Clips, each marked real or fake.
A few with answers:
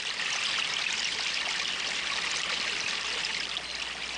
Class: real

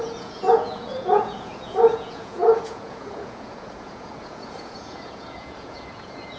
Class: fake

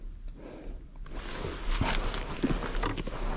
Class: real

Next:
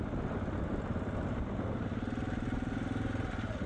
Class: real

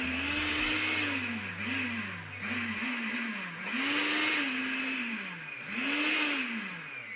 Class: real